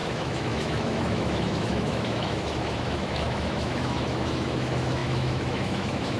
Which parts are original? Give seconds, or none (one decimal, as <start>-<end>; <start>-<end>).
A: none